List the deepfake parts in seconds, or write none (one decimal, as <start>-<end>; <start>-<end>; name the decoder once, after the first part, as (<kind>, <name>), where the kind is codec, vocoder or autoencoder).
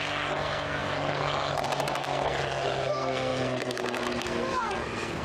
0.0-5.2 (codec, SNAC)